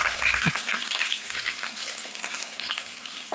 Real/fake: fake